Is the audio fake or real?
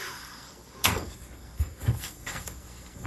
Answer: fake